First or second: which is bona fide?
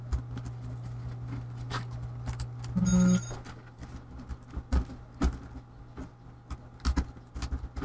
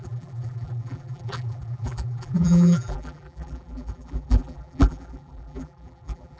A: first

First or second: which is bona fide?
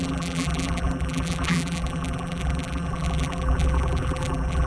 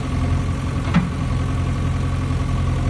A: second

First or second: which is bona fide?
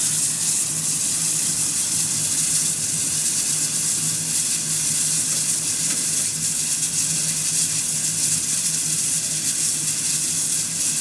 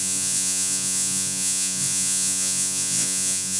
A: first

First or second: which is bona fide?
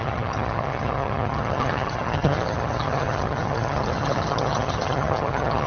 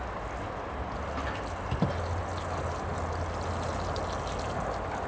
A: second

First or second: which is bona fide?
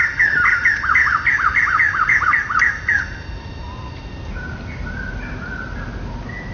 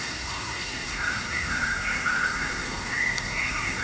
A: first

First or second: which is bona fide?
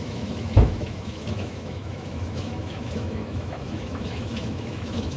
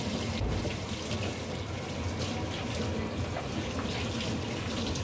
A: second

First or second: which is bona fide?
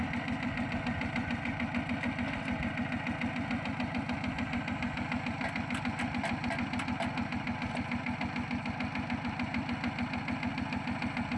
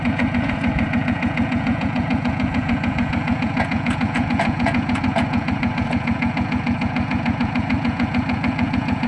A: first